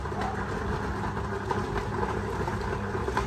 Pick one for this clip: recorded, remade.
recorded